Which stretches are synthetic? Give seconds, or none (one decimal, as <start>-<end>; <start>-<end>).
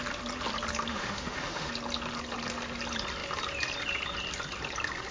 0.9-1.7